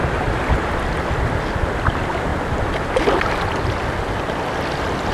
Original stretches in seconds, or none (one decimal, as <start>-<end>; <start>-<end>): 0.0-5.1